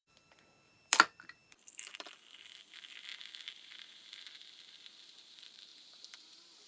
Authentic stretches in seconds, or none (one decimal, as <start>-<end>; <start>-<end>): 3.1-4.9